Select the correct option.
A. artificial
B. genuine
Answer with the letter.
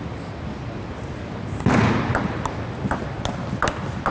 B